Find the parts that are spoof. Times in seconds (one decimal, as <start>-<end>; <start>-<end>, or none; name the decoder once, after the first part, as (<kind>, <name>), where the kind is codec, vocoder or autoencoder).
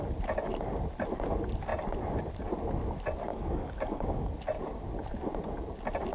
3.3-4.3 (codec, DAC)